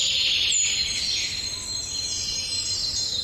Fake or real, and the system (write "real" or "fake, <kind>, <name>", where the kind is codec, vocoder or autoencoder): real